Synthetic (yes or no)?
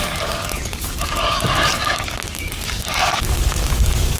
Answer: yes